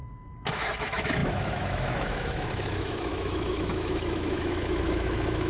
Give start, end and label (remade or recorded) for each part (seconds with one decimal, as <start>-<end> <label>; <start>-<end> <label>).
0.0-0.5 recorded; 0.5-5.5 remade